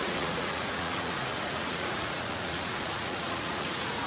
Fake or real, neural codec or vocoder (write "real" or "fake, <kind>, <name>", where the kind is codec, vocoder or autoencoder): fake, vocoder, Vocos